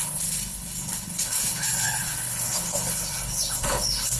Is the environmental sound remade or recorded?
remade